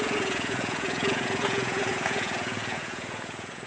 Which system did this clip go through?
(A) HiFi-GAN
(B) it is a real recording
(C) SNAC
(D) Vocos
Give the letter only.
D